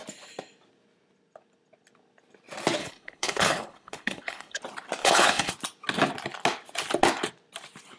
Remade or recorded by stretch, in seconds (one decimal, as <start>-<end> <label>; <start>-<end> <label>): 0.0-2.8 recorded; 2.8-4.6 remade; 4.6-5.0 recorded; 5.0-5.5 remade; 5.5-8.0 recorded